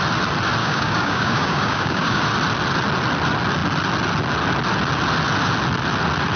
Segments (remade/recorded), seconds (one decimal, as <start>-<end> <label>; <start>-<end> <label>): 0.0-0.6 recorded; 0.6-2.2 remade; 2.2-6.4 recorded